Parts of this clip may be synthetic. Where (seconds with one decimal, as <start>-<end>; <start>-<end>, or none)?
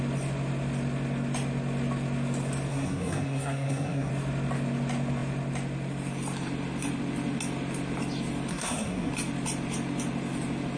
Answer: 2.7-4.1; 8.5-9.1